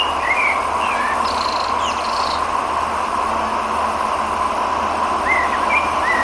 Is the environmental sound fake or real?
real